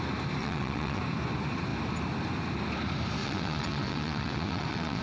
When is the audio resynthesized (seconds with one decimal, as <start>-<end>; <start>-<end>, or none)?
0.4-1.0; 3.2-5.0